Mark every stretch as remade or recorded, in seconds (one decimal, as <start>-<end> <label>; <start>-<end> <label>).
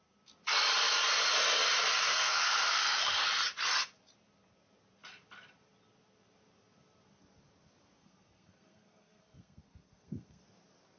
0.0-2.1 recorded; 2.1-3.2 remade; 3.2-8.0 recorded; 8.0-10.4 remade; 10.4-11.0 recorded